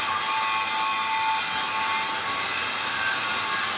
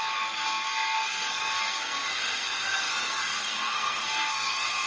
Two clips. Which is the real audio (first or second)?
first